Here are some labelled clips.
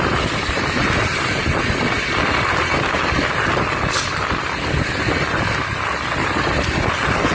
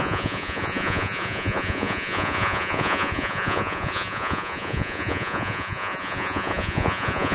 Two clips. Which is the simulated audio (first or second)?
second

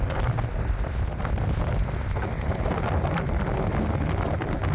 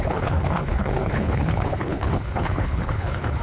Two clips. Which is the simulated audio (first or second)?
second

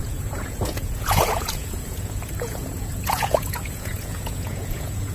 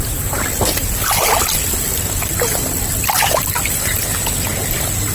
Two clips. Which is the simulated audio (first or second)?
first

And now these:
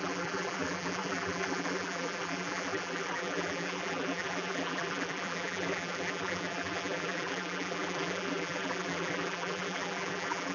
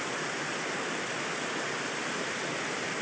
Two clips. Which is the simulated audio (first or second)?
first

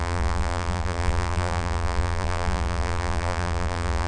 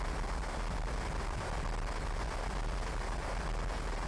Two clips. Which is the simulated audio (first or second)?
first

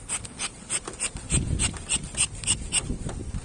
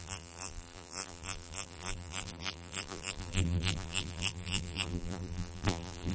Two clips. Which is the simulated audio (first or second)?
second